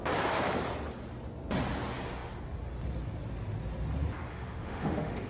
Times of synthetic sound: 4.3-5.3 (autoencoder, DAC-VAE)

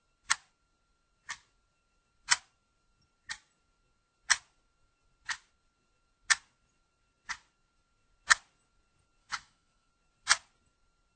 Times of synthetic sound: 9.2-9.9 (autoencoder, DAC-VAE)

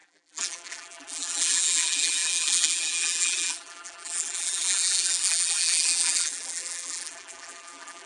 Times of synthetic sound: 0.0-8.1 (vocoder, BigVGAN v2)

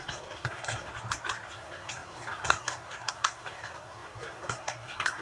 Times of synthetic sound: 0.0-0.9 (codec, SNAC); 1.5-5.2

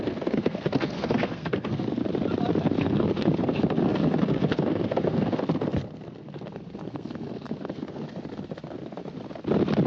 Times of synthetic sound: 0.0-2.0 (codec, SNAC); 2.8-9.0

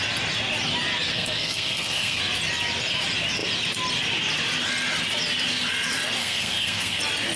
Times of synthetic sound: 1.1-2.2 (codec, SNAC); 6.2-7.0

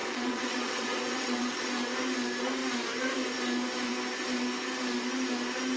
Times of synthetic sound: 0.0-1.7 (vocoder, WaveNeXt)

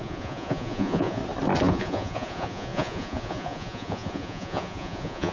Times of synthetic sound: 0.0-1.2 (vocoder, Vocos); 1.7-5.3